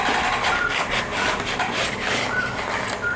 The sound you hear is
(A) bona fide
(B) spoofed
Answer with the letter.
A